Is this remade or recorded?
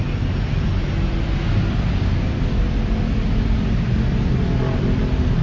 recorded